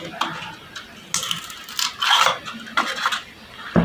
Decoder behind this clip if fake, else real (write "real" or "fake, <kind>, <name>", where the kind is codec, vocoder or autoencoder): real